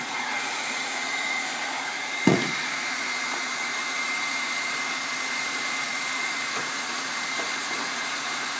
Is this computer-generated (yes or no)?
yes